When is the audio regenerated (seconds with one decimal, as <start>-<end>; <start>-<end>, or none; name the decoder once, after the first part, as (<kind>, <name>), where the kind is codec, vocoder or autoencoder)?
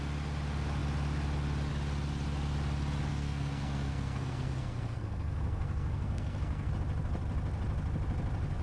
3.1-6.7 (codec, SNAC)